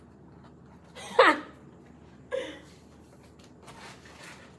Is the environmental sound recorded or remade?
recorded